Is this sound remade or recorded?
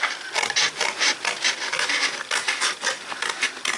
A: recorded